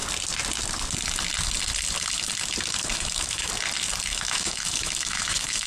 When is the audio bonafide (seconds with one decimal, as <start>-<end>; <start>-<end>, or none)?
0.0-2.9; 3.5-4.1